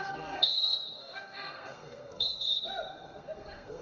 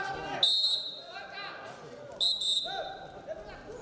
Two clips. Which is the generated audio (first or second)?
first